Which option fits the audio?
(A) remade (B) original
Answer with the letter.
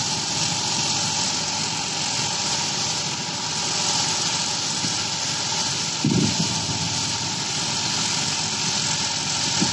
A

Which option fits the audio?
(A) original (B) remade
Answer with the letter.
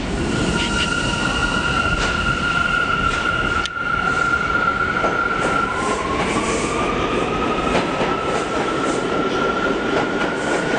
B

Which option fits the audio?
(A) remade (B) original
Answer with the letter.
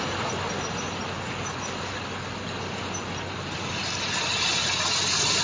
B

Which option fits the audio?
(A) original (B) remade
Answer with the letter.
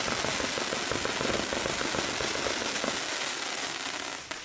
A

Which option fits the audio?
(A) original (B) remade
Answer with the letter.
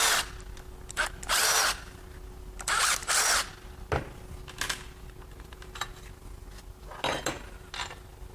A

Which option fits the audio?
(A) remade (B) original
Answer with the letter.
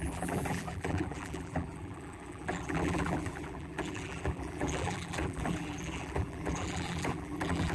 A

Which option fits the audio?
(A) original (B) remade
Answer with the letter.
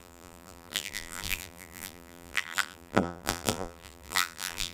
B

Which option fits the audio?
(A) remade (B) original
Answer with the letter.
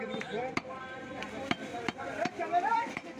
A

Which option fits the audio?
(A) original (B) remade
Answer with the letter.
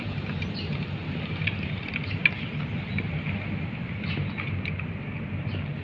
A